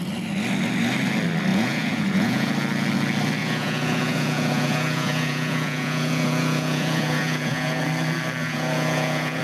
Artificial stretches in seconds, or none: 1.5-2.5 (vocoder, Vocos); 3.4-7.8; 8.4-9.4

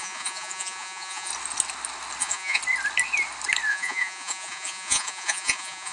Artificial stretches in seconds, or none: 0.0-1.3 (vocoder, Vocos); 2.2-2.6; 3.7-5.9

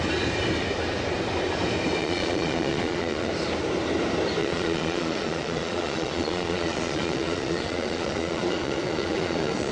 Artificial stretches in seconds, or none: 2.0-3.3 (vocoder, Vocos); 4.4-9.7